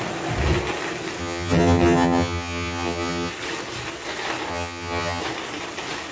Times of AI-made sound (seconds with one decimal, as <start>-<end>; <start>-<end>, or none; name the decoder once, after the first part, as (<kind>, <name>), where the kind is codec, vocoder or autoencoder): 1.2-3.3 (vocoder, HiFi-GAN); 4.5-5.2

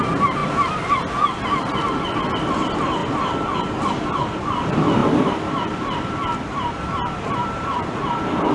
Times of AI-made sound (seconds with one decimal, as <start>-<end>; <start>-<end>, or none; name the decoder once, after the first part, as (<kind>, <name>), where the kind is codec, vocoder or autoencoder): 5.0-8.5 (vocoder, BigVGAN v2)

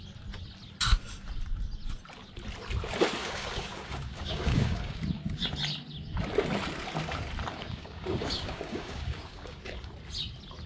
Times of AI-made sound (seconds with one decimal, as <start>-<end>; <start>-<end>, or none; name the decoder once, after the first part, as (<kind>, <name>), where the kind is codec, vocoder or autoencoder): 3.2-5.0 (codec, DAC); 7.5-9.9

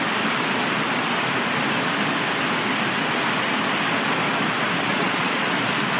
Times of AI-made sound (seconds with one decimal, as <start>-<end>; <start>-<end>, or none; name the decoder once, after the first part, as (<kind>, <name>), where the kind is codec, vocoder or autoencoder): 4.9-5.4 (vocoder, Vocos)

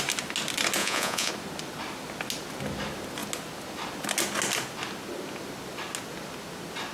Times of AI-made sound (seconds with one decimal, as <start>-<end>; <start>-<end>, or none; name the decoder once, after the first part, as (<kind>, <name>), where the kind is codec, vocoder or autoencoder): 0.8-1.3 (vocoder, Vocos)

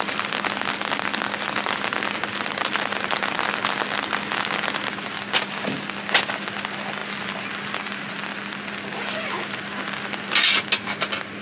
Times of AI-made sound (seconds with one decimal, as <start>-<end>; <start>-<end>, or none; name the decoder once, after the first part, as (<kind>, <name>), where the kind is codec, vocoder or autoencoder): none

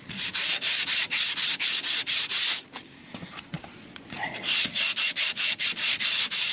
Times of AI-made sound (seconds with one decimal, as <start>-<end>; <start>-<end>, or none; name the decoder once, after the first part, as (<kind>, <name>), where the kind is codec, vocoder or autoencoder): 3.5-6.0 (vocoder, Vocos)

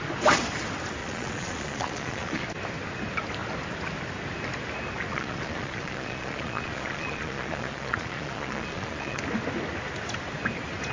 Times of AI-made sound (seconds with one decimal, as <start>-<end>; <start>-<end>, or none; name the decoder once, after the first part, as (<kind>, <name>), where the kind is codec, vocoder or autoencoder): 1.0-2.4 (vocoder, Vocos); 5.1-9.2